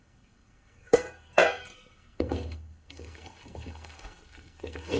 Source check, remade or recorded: remade